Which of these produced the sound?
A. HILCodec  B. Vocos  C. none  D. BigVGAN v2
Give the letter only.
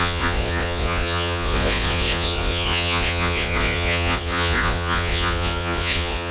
B